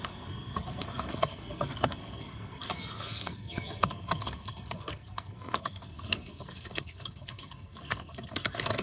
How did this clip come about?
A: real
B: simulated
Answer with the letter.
B